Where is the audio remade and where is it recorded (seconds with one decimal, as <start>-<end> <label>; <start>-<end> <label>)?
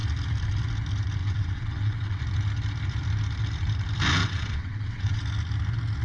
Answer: 0.0-1.2 recorded; 1.2-2.2 remade; 2.2-4.2 recorded; 4.2-5.2 remade; 5.2-6.0 recorded